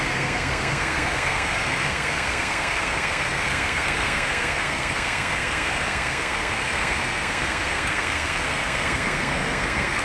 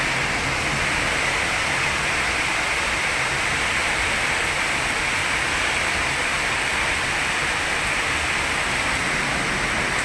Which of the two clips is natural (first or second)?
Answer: second